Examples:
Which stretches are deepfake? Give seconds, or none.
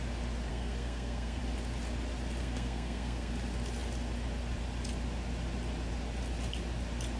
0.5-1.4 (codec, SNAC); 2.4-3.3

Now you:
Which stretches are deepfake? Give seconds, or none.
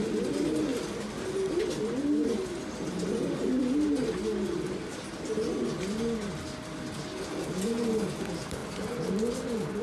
none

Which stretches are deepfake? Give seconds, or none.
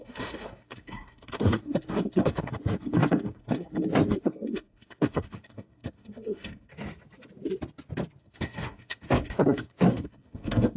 0.0-6.7 (codec, SNAC); 8.2-10.8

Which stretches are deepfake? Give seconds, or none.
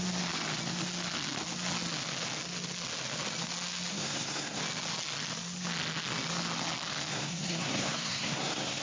3.9-4.6 (codec, SNAC); 7.1-8.8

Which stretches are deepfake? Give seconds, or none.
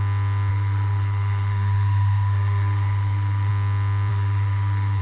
0.5-3.5 (codec, SNAC); 4.1-5.0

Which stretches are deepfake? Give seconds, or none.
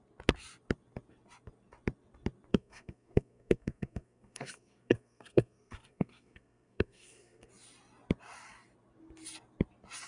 2.5-7.5 (codec, SNAC)